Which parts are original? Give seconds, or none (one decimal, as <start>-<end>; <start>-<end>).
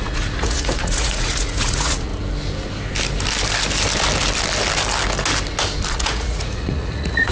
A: 2.1-5.9